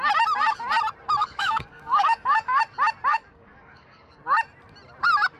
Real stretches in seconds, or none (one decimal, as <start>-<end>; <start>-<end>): 0.0-1.2; 2.6-3.1; 4.2-5.4